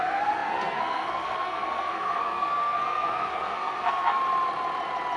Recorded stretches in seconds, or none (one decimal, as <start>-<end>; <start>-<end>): 4.2-5.2